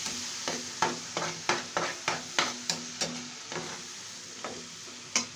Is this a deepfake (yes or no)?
no